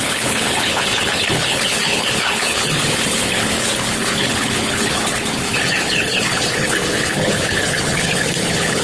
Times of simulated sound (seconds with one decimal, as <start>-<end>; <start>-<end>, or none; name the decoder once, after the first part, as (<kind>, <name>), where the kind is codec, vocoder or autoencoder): 0.0-8.8 (codec, HILCodec)